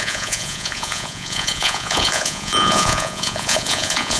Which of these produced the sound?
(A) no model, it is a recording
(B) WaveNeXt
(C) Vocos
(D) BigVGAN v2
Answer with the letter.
C